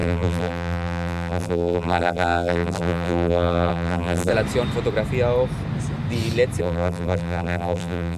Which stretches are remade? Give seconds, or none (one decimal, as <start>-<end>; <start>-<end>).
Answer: 0.0-4.3; 6.6-8.2